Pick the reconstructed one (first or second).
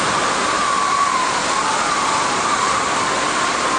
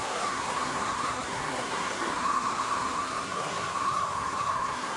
second